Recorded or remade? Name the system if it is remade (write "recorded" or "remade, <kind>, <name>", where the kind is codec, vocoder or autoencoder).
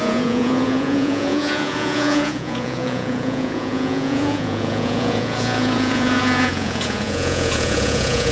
remade, vocoder, Vocos